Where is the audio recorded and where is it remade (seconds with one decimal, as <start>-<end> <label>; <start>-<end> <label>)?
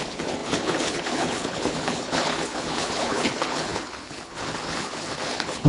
0.0-5.7 remade